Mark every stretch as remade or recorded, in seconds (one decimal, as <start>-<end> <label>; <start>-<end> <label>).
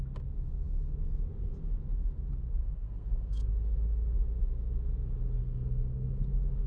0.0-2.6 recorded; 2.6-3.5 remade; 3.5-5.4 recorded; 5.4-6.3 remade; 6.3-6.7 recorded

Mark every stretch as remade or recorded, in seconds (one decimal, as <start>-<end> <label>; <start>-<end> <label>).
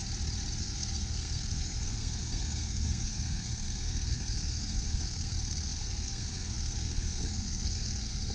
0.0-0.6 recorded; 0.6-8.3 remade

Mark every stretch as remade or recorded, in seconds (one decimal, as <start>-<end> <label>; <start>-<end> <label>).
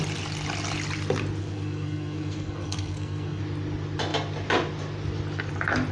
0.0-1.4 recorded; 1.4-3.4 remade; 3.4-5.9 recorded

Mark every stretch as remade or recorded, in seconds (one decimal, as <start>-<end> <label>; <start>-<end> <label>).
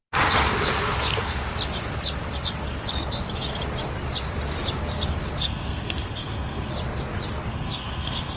0.0-5.4 recorded; 5.4-6.7 remade; 6.7-7.5 recorded; 7.5-8.4 remade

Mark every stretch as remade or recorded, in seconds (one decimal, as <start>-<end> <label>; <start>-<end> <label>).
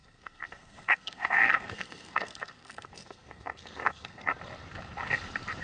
0.0-4.3 remade; 4.3-5.6 recorded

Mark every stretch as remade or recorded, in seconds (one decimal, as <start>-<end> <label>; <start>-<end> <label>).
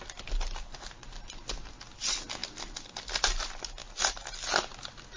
0.0-5.2 recorded